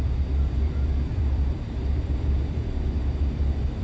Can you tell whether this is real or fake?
fake